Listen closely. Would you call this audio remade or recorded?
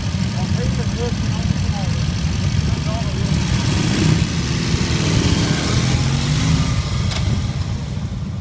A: recorded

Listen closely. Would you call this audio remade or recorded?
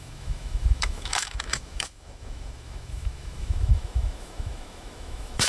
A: remade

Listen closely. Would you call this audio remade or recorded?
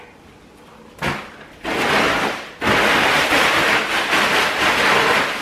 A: recorded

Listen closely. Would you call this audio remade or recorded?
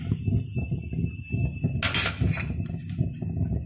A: recorded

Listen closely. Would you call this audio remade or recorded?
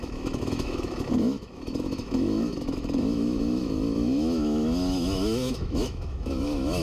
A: remade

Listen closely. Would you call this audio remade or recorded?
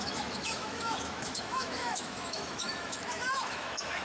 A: remade